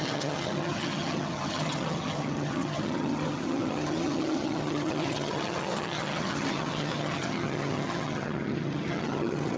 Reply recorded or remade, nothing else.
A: remade